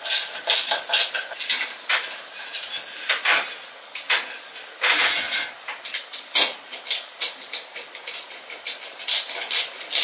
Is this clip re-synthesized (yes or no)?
no